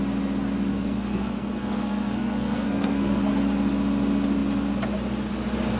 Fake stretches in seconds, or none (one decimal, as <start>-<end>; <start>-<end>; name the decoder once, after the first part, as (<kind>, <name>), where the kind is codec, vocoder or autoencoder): 0.7-3.3 (codec, SNAC)